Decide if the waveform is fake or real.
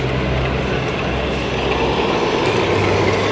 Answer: real